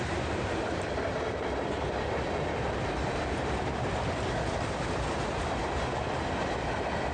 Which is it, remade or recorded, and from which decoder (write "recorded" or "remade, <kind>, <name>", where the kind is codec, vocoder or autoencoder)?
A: recorded